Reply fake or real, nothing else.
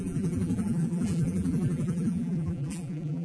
fake